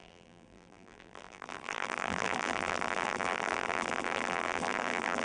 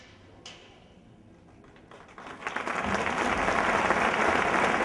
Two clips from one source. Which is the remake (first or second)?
first